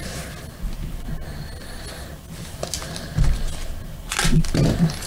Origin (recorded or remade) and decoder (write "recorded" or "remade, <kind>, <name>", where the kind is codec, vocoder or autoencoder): recorded